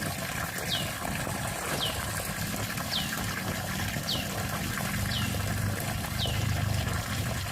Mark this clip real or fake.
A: real